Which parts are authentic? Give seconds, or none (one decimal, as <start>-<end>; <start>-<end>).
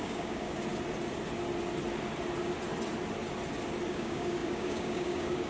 0.6-3.9